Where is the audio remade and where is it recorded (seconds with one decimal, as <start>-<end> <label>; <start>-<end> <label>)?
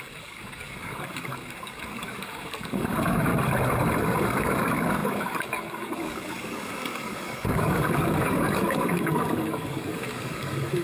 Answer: 0.0-3.3 remade; 3.3-4.4 recorded; 4.4-10.8 remade